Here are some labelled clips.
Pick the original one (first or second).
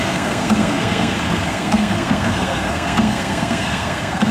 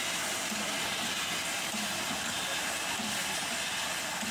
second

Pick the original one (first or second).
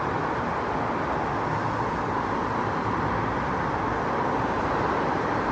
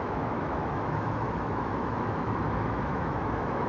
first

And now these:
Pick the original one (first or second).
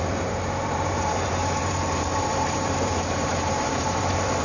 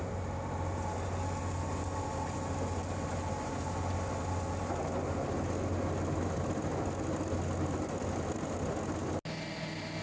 second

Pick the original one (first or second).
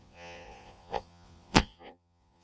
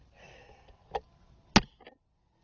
second